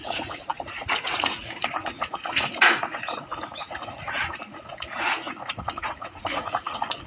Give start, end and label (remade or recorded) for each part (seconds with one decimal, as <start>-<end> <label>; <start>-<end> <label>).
0.0-7.1 remade